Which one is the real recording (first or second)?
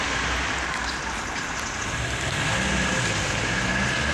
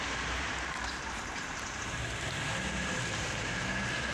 first